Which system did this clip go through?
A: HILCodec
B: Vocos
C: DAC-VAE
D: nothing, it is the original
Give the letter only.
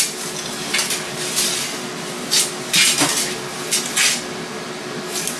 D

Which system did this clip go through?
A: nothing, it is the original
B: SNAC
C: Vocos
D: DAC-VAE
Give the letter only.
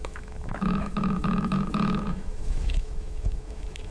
D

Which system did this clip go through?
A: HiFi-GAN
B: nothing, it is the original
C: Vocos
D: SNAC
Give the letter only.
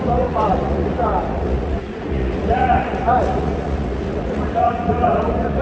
C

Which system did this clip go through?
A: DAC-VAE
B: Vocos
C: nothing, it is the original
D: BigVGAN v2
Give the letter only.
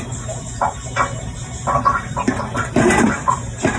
D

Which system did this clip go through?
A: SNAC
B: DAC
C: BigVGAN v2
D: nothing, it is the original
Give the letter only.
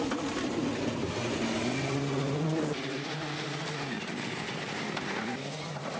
D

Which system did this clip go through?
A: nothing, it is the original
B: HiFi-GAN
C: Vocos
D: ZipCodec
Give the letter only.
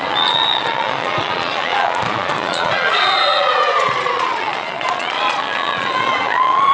C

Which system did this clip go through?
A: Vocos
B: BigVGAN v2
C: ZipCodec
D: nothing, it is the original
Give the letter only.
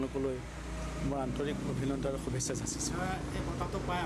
D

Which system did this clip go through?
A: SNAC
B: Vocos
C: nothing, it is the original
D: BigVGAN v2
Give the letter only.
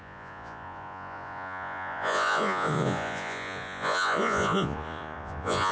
B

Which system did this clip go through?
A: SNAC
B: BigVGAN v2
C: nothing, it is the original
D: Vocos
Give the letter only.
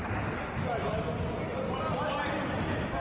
C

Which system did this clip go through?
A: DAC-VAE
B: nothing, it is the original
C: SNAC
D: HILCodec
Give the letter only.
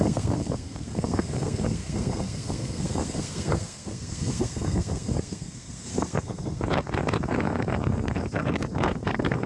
C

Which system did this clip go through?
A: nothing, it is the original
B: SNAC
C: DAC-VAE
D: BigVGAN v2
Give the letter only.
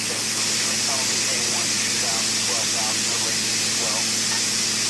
A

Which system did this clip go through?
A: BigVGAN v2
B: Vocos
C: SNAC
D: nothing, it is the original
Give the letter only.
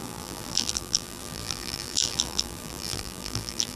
A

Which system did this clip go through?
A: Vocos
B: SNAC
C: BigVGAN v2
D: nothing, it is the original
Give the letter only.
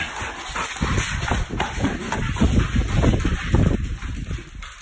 D